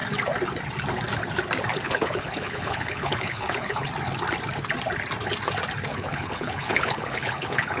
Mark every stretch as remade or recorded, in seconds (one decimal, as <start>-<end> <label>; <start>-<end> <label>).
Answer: 0.0-1.7 recorded; 1.7-3.9 remade; 3.9-5.9 recorded; 5.9-7.8 remade